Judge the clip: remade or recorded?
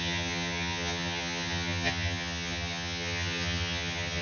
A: remade